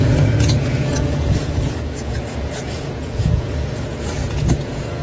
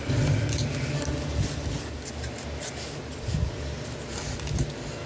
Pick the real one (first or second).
second